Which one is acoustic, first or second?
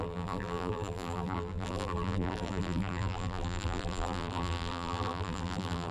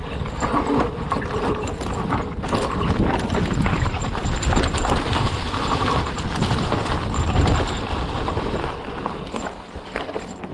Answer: second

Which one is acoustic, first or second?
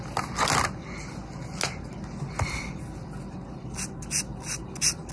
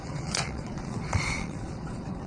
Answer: first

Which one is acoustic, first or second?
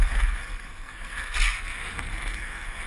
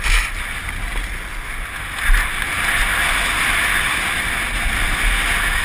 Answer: second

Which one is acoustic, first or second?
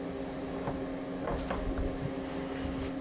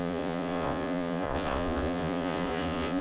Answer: first